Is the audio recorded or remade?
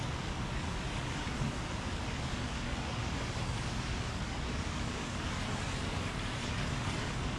remade